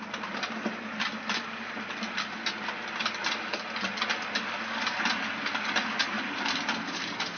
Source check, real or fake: real